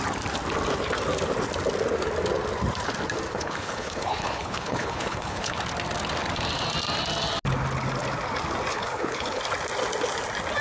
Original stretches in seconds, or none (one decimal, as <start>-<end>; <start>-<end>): 0.0-3.3; 5.6-8.7; 9.4-10.6